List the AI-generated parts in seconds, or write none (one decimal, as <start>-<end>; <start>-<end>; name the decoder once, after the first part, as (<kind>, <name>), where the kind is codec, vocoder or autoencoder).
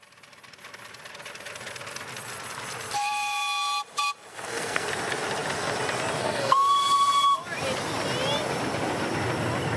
4.3-4.9 (codec, SNAC); 6.2-6.7